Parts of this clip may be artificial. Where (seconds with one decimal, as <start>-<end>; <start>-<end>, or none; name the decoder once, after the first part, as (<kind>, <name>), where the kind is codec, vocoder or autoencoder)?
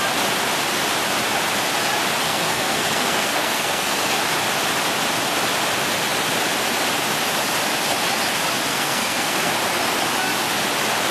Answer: 2.2-4.2 (codec, SNAC); 8.7-9.5